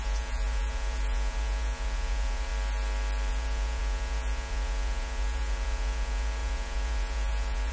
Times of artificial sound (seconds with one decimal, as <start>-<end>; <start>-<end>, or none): 0.0-2.5; 3.3-7.7